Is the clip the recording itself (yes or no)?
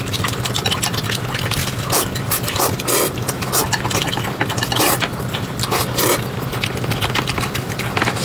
yes